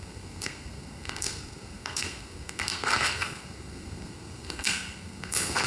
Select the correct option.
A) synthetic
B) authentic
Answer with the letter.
A